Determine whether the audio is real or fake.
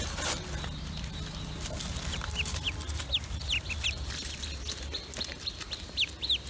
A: real